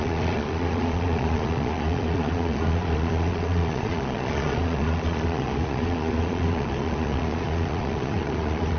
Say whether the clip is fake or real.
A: fake